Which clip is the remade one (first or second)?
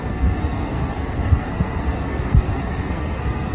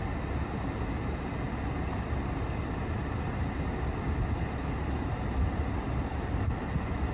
first